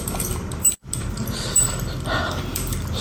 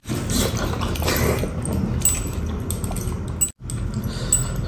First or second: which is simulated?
first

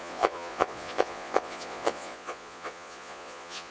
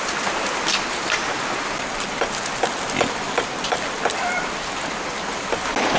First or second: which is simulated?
first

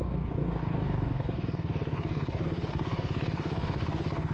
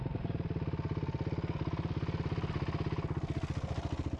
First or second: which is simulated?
first